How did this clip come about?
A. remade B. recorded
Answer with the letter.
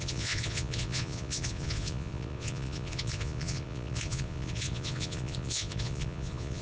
A